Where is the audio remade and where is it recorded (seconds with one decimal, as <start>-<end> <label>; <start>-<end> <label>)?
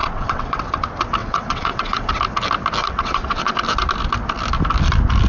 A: 0.0-0.6 remade; 0.6-1.2 recorded; 1.2-2.1 remade; 2.1-2.8 recorded; 2.8-3.5 remade; 3.5-5.3 recorded